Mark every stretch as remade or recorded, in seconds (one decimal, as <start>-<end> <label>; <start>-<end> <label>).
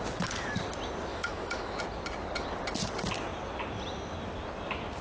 0.0-1.1 recorded; 1.1-1.8 remade; 1.8-5.0 recorded